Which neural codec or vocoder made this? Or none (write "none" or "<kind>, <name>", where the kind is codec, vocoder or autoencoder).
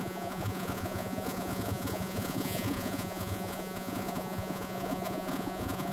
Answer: vocoder, Vocos